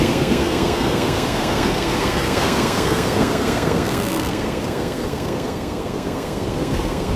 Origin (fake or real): fake